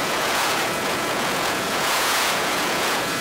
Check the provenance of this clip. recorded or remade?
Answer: remade